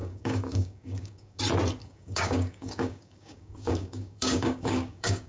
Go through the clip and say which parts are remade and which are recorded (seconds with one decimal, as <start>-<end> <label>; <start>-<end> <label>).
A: 0.0-1.4 remade; 1.4-1.8 recorded; 1.8-5.3 remade